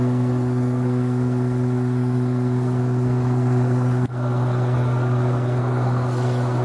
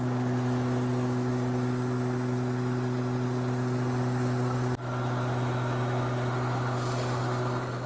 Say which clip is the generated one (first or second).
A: first